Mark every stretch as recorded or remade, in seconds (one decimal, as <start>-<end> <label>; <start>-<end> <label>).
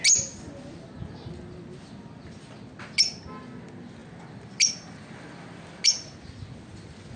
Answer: 0.0-7.2 recorded